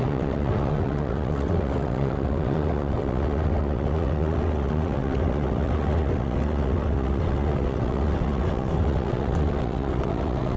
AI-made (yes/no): yes